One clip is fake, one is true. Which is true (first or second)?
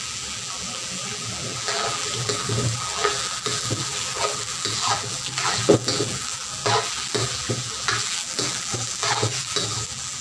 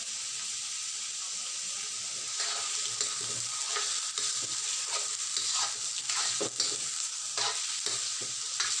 second